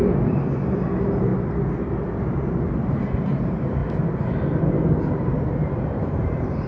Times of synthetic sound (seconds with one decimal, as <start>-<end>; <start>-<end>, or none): 0.0-1.3; 2.2-3.8; 4.7-6.7